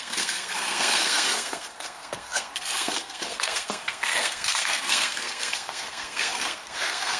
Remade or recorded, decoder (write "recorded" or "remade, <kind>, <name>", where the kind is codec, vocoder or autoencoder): remade, codec, SNAC